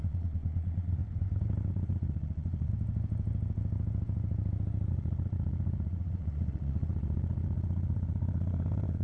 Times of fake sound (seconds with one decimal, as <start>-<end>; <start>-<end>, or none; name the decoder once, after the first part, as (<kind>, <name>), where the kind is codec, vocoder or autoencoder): 0.0-1.0 (vocoder, Vocos); 1.7-2.7; 4.9-9.0